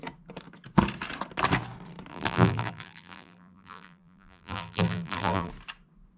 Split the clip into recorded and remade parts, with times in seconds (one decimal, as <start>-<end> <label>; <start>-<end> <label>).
0.0-2.1 recorded; 2.1-5.5 remade; 5.5-6.2 recorded